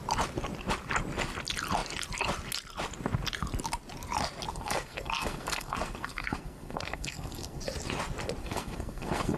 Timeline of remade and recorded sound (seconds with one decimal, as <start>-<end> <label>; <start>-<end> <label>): 0.0-4.5 recorded; 4.5-7.6 remade; 7.6-8.4 recorded; 8.4-9.4 remade